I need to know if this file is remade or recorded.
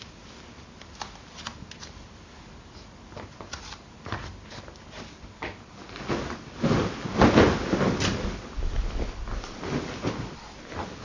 recorded